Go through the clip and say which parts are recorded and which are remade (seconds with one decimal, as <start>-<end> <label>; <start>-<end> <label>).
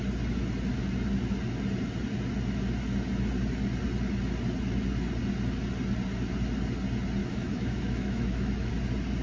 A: 0.0-7.2 recorded; 7.2-8.7 remade; 8.7-9.2 recorded